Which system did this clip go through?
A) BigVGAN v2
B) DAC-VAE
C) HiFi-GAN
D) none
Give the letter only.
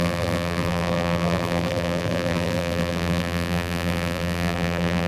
A